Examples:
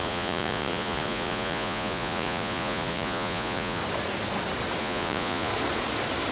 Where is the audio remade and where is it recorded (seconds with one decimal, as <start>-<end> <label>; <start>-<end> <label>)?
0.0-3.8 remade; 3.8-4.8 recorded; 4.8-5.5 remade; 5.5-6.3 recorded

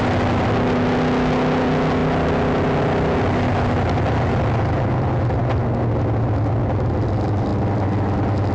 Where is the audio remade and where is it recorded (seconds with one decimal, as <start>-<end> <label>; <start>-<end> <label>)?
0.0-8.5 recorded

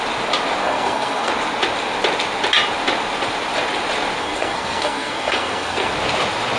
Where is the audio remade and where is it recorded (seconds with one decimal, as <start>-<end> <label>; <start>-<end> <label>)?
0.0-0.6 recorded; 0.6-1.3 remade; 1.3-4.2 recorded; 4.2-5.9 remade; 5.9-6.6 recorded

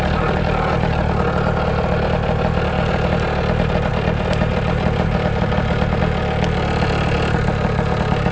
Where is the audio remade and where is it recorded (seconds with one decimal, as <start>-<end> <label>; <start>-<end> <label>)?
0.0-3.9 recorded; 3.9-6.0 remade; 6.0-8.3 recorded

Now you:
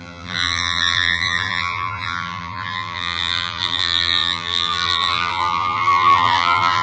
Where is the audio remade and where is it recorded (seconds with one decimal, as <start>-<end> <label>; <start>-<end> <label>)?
0.0-6.8 remade

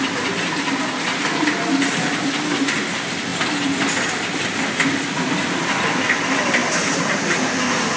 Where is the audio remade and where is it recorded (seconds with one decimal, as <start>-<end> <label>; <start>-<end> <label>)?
0.0-6.6 recorded; 6.6-7.5 remade; 7.5-8.0 recorded